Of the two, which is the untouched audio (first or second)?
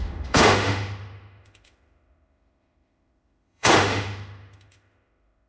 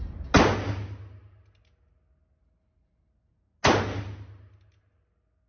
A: second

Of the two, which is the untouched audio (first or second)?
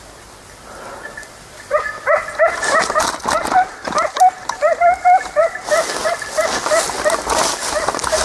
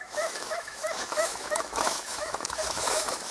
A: first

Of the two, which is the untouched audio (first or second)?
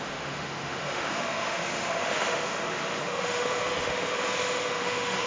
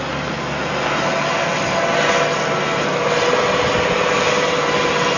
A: second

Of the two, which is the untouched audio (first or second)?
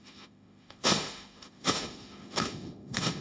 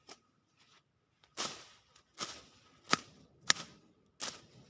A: second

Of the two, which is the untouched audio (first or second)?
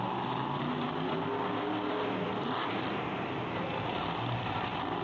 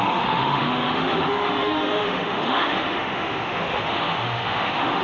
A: first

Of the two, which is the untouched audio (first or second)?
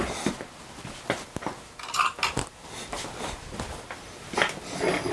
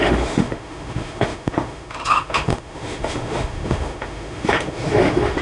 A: first